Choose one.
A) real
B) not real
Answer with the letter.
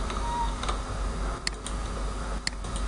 A